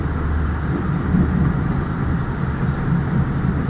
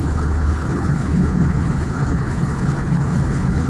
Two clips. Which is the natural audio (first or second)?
first